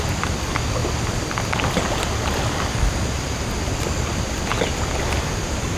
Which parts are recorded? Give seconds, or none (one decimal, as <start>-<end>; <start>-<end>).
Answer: 0.0-5.8

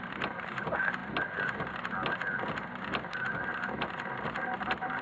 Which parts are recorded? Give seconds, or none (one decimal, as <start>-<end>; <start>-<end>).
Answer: 0.0-5.0